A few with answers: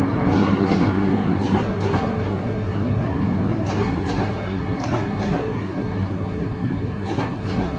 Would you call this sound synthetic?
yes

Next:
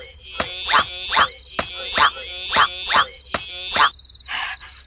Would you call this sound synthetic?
no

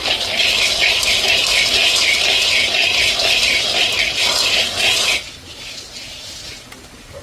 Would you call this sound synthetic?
no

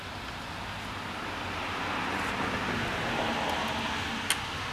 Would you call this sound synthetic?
no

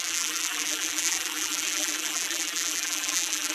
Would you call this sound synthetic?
yes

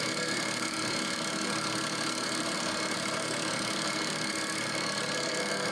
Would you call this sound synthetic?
yes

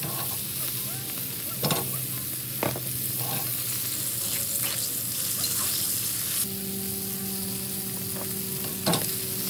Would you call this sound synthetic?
no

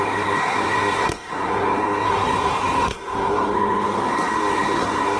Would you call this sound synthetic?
yes